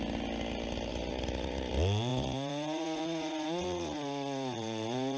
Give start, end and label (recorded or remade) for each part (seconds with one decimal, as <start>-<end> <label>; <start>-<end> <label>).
0.0-0.9 recorded; 0.9-1.7 remade; 1.7-2.1 recorded; 2.1-5.2 remade